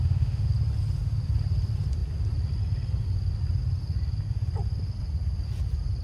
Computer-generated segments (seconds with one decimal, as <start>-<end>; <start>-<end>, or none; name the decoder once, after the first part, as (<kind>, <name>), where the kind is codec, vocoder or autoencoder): 0.0-0.5 (autoencoder, DAC-VAE)